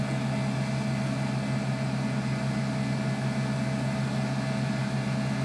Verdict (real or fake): real